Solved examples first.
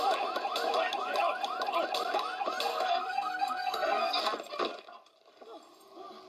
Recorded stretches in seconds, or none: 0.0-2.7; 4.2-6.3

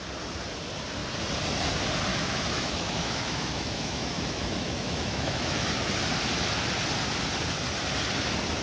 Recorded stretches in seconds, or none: 0.0-2.1; 5.7-8.6

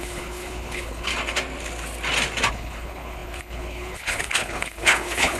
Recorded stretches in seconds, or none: 1.1-2.5

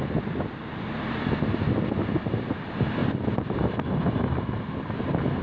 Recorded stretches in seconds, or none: 0.0-5.4